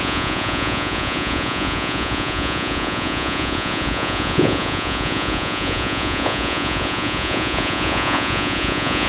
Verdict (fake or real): fake